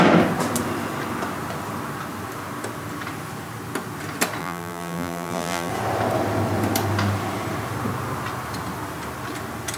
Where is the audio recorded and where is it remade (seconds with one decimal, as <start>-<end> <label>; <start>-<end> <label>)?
0.0-4.4 recorded; 4.4-5.7 remade; 5.7-9.8 recorded

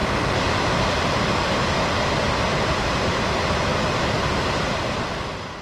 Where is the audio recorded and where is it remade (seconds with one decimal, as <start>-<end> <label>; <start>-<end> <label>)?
0.0-5.6 recorded

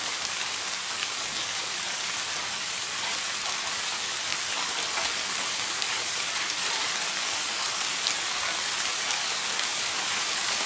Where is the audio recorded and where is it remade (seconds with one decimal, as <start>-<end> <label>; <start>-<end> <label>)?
0.0-2.9 remade; 2.9-3.5 recorded; 3.5-10.7 remade

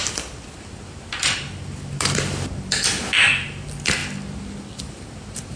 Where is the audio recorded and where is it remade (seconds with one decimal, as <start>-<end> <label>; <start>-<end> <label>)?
0.0-5.6 recorded

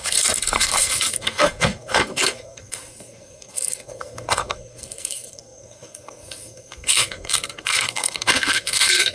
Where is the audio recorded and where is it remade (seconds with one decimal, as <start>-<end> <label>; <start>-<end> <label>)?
0.0-9.1 remade